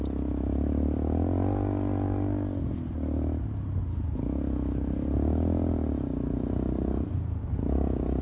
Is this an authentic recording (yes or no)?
yes